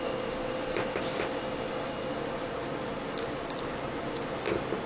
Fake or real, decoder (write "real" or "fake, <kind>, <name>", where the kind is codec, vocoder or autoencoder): real